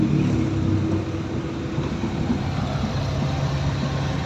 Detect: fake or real real